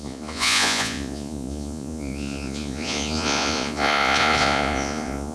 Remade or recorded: remade